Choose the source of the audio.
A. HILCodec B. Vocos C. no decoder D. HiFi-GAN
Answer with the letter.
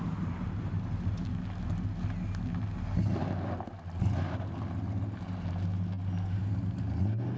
C